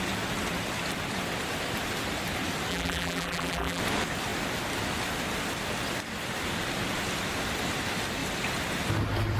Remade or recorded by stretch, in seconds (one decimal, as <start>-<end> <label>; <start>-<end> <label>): 0.0-2.7 recorded; 2.7-3.8 remade; 3.8-9.4 recorded